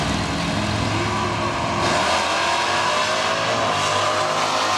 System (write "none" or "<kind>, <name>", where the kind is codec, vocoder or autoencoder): none